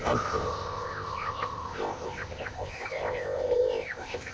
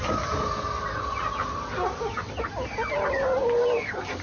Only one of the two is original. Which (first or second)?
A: second